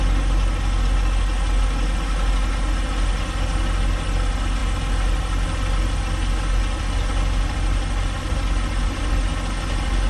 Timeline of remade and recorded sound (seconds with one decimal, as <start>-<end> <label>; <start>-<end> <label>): 0.0-10.1 recorded